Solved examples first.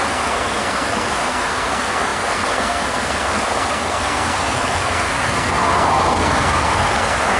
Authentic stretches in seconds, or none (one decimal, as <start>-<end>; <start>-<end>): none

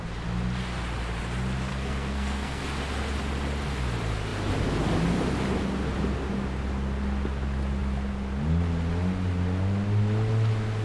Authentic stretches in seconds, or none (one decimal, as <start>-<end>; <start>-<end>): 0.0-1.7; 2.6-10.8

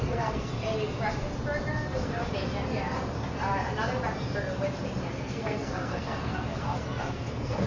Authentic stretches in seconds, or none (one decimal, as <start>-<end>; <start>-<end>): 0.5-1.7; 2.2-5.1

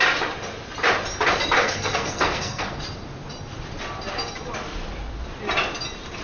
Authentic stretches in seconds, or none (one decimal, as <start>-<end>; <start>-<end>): 0.0-1.6; 2.8-6.2